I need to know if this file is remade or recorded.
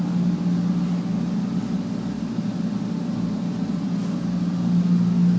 recorded